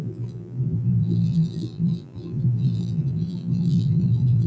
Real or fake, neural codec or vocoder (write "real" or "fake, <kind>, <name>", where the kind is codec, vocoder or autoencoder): fake, vocoder, BigVGAN v2